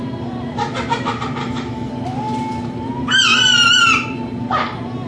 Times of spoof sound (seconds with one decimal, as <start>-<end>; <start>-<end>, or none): 1.4-1.9